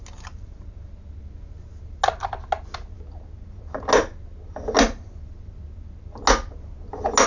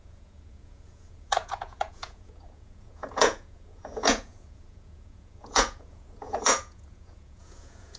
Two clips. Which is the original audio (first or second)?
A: first